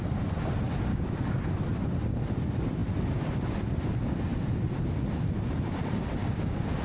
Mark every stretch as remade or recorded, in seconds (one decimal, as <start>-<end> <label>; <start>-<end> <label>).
0.0-0.9 recorded; 0.9-1.4 remade; 1.4-6.2 recorded; 6.2-6.8 remade